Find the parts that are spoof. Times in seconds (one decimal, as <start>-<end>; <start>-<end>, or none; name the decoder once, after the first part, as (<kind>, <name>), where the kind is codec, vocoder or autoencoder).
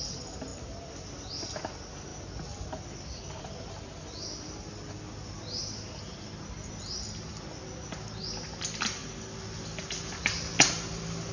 none